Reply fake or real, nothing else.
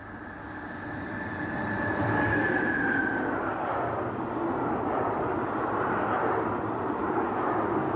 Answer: fake